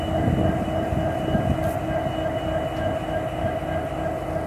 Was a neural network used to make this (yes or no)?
no